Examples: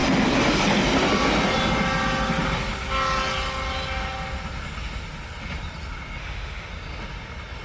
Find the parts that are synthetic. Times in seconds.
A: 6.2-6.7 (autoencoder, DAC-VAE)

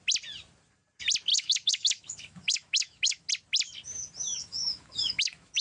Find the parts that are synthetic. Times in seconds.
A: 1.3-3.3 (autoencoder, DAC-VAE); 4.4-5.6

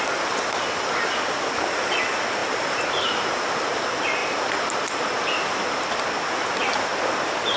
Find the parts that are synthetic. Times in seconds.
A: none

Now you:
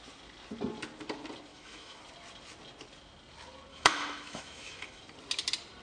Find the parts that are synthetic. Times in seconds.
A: 1.5-2.0 (autoencoder, DAC-VAE); 3.7-5.0